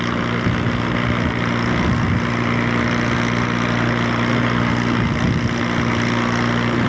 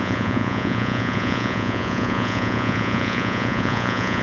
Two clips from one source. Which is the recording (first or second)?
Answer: first